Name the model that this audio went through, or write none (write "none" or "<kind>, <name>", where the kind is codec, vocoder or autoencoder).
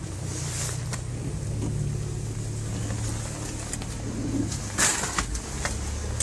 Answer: none